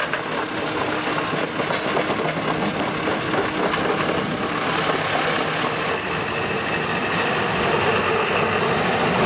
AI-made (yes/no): no